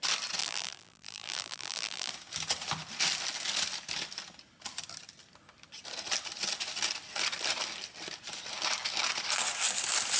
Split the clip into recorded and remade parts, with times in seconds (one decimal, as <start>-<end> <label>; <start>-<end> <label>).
0.0-0.4 recorded; 0.4-2.1 remade; 2.1-10.2 recorded